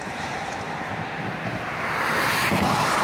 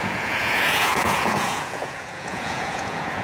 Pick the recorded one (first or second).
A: first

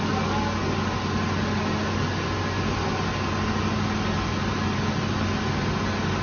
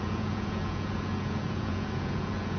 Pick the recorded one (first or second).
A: first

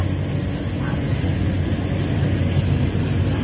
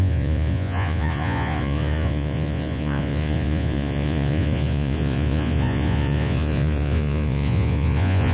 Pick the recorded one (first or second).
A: first